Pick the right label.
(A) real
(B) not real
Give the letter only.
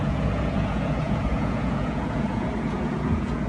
B